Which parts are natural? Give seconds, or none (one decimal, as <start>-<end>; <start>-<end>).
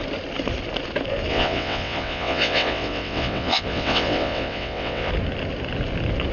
0.0-1.3; 5.1-6.3